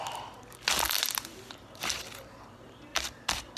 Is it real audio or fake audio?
real